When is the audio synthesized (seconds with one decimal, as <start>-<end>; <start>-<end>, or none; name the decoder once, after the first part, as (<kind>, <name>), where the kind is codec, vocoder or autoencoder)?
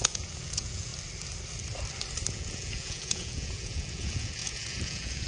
0.0-0.9 (vocoder, Vocos); 2.3-5.3